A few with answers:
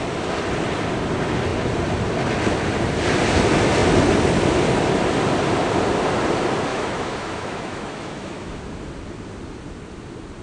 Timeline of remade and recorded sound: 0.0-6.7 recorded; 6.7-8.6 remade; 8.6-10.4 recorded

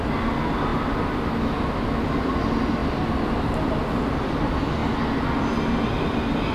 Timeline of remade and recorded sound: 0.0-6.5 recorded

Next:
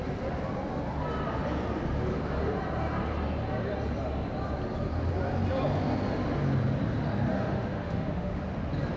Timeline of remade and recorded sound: 0.0-7.3 recorded; 7.3-8.4 remade; 8.4-9.0 recorded

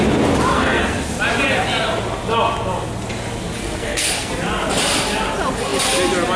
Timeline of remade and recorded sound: 0.0-0.5 recorded; 0.5-1.0 remade; 1.0-3.6 recorded; 3.6-4.3 remade; 4.3-6.4 recorded

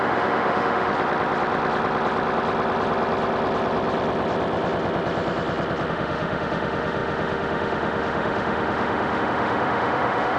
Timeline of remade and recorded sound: 0.0-0.9 remade; 0.9-5.9 recorded; 5.9-10.4 remade

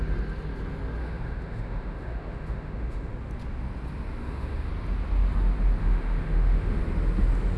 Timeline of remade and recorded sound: 0.0-1.0 recorded; 1.0-3.2 remade; 3.2-4.2 recorded; 4.2-4.7 remade; 4.7-5.8 recorded; 5.8-6.8 remade; 6.8-7.6 recorded

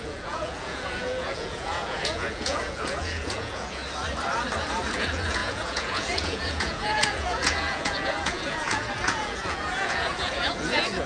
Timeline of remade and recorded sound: 0.0-3.8 remade; 3.8-4.9 recorded; 4.9-11.1 remade

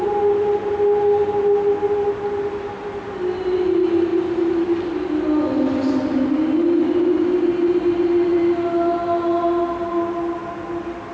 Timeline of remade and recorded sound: 0.0-11.1 recorded